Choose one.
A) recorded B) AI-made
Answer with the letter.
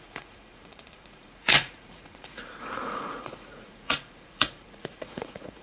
B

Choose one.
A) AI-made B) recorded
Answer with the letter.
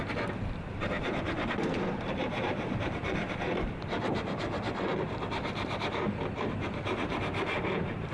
A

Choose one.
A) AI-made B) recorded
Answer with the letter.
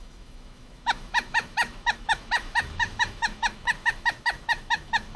A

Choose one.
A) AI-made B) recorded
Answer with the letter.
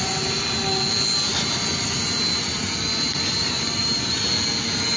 B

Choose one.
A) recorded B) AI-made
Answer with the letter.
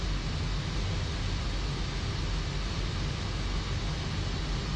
A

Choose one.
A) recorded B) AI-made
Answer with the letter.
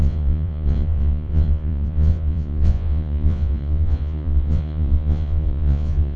B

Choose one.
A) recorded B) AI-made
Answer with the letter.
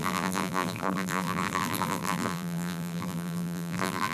B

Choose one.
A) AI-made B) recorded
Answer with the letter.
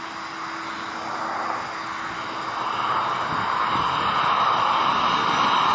B